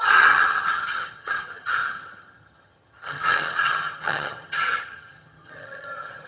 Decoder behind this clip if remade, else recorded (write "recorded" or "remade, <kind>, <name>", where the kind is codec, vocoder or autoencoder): remade, vocoder, HiFi-GAN